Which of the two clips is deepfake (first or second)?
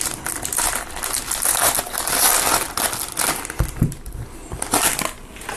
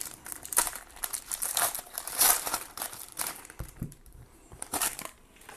second